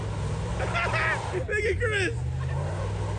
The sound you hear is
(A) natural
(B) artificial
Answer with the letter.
A